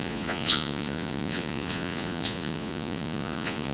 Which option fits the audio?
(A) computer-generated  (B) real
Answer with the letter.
A